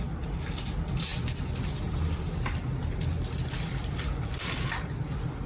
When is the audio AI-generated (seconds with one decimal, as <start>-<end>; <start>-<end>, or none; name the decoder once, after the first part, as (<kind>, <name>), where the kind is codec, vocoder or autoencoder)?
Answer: none